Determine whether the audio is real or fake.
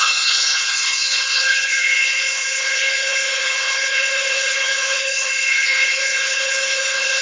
fake